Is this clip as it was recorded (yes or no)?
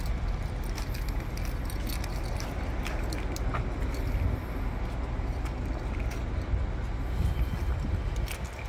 yes